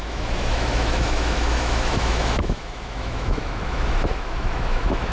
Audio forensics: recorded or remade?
remade